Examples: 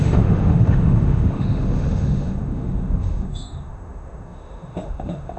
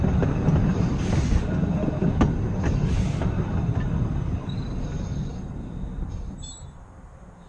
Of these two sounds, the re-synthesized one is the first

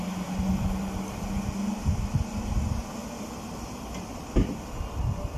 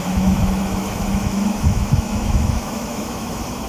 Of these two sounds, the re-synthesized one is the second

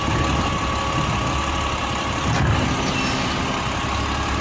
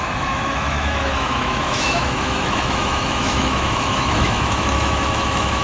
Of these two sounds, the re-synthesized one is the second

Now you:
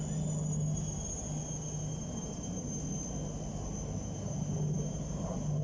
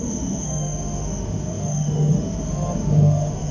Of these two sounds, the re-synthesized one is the second